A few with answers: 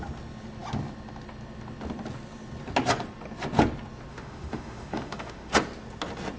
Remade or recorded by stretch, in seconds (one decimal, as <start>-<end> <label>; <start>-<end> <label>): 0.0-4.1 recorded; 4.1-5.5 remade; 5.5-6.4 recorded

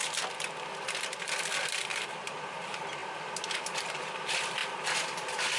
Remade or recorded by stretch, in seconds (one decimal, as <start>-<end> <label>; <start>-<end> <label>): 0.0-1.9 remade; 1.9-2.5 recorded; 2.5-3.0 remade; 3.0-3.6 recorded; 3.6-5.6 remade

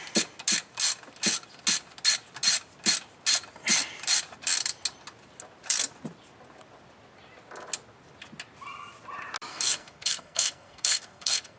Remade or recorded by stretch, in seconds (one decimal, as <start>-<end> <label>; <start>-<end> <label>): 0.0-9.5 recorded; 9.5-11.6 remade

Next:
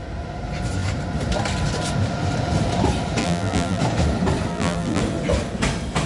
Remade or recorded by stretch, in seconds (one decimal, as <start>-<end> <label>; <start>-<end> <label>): 0.0-3.2 recorded; 3.2-3.8 remade; 3.8-4.5 recorded; 4.5-5.0 remade; 5.0-6.1 recorded

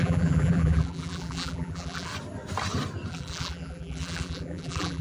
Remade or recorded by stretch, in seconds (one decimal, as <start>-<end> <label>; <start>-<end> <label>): 0.0-2.1 remade; 2.1-3.1 recorded; 3.1-5.0 remade

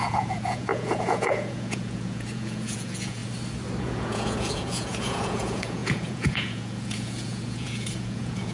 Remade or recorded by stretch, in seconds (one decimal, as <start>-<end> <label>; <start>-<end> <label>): 0.0-3.2 remade; 3.2-3.8 recorded; 3.8-8.5 remade

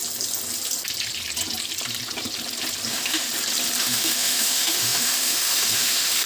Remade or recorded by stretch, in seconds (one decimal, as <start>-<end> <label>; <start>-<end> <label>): 0.0-2.9 recorded; 2.9-3.3 remade; 3.3-3.8 recorded; 3.8-6.3 remade